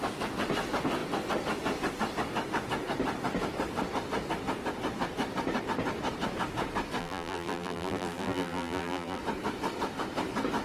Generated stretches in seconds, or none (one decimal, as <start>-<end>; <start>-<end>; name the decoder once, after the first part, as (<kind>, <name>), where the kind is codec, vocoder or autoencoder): 7.0-9.2 (vocoder, BigVGAN v2)